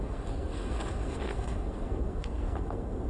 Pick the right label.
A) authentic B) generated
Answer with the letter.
B